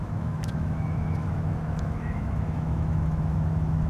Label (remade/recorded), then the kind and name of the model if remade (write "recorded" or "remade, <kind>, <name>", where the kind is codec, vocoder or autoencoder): remade, autoencoder, DAC-VAE